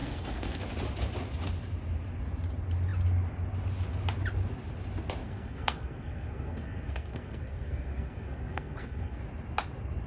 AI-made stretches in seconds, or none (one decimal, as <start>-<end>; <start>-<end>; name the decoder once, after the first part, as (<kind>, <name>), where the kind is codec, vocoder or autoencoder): 0.0-0.6 (codec, SNAC); 5.2-9.2